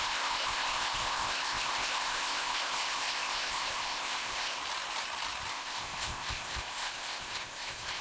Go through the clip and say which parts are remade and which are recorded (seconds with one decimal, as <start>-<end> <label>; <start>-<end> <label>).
0.0-4.6 remade; 4.6-5.5 recorded; 5.5-8.0 remade